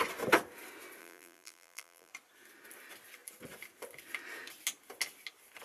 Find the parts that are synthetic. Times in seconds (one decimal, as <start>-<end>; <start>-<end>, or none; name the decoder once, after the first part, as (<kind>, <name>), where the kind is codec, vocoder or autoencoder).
1.0-2.1 (vocoder, BigVGAN v2)